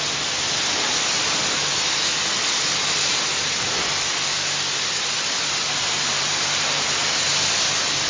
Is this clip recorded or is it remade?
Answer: recorded